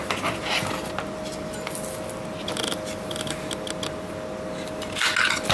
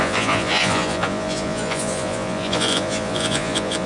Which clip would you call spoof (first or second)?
second